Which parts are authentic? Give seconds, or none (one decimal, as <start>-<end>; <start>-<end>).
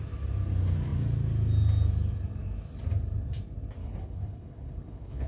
0.0-3.8